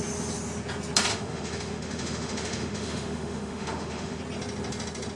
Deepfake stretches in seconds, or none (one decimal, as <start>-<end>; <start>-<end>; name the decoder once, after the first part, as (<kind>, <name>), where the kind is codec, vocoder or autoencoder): 1.1-4.2 (autoencoder, DAC-VAE)